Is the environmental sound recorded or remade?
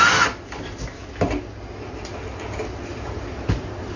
recorded